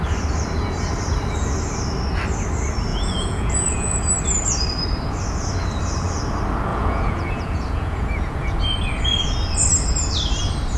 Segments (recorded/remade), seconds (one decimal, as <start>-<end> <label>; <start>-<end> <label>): 0.0-2.9 recorded; 2.9-4.1 remade; 4.1-6.7 recorded; 6.7-8.6 remade; 8.6-10.8 recorded